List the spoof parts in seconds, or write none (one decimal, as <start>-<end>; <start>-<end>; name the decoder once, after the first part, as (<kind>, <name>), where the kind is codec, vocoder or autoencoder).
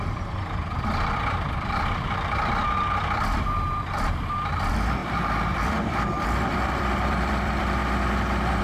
0.0-7.8 (vocoder, BigVGAN v2)